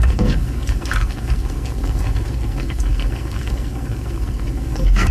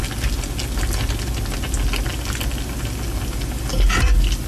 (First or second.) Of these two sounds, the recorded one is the second